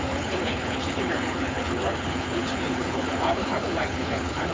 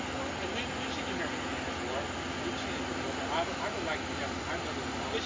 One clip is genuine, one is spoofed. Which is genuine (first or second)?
second